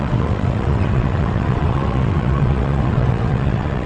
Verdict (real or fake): fake